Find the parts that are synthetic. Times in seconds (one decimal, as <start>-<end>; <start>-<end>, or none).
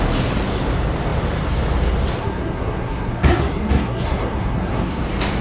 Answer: 2.2-5.0